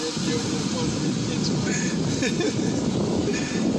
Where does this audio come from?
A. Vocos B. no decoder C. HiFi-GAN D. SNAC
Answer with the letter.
B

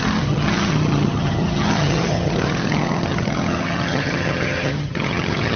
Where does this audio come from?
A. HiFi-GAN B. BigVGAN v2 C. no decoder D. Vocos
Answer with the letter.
A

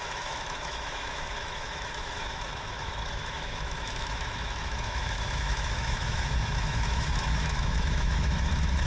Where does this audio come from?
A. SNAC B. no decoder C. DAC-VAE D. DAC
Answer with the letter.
C